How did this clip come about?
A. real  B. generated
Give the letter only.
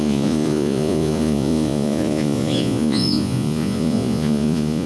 B